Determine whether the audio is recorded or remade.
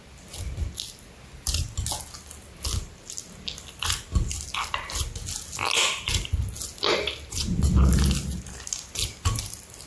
recorded